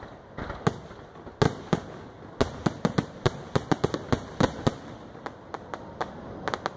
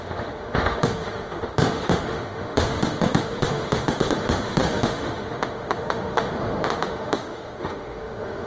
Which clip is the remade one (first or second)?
second